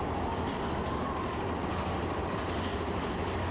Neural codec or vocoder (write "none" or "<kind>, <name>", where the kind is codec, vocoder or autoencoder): none